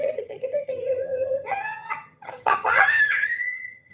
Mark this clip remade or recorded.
remade